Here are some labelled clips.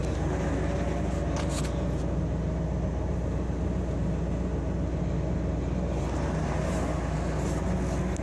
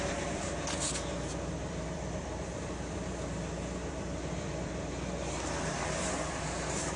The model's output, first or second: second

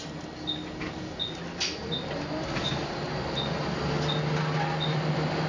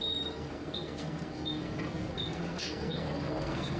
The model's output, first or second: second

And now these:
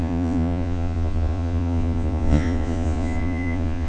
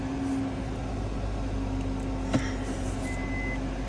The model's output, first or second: first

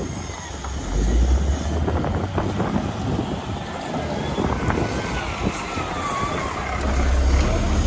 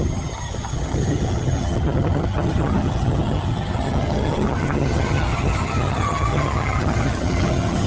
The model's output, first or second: second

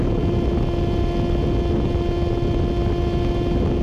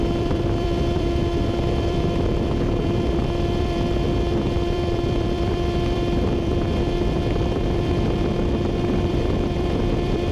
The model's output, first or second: second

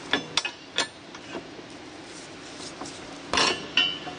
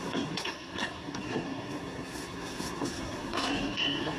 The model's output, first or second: second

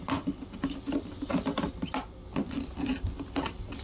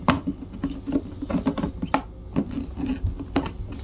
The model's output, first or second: first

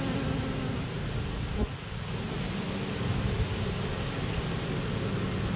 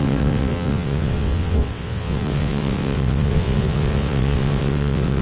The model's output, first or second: second